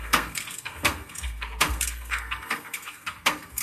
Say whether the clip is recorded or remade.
remade